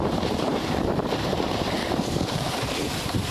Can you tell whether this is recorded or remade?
remade